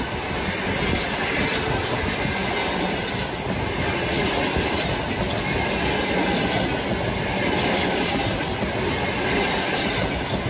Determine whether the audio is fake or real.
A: real